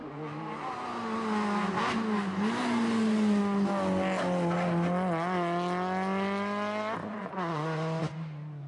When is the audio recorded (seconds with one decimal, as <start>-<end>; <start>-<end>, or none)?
0.0-7.0; 8.0-8.7